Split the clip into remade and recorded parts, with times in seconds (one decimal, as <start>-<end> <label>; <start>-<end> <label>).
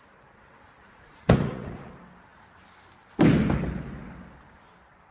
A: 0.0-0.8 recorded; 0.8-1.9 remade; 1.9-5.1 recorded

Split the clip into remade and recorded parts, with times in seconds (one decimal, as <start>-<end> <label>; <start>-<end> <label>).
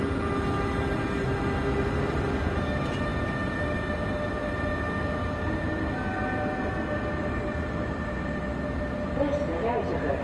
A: 0.0-10.2 recorded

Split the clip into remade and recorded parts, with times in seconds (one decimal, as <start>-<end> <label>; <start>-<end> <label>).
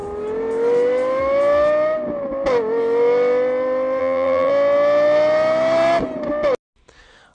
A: 0.0-4.0 recorded; 4.0-4.5 remade; 4.5-7.3 recorded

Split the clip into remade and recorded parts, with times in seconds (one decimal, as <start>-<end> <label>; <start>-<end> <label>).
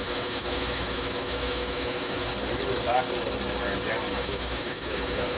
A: 0.0-2.3 remade; 2.3-4.1 recorded; 4.1-5.4 remade